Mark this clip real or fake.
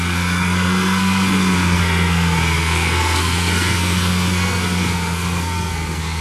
fake